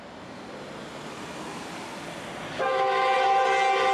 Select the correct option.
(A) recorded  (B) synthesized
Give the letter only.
A